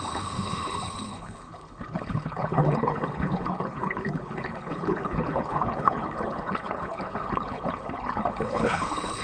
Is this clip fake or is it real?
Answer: fake